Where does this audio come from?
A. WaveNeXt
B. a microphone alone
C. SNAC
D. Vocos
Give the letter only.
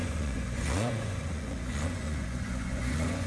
D